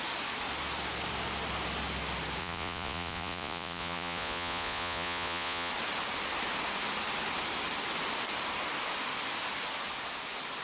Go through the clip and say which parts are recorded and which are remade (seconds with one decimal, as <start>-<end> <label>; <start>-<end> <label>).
0.0-2.4 recorded; 2.4-5.7 remade; 5.7-10.6 recorded